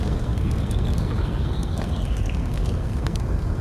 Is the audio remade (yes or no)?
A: yes